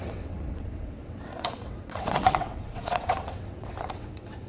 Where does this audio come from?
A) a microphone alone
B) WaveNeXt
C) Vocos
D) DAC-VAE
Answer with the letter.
B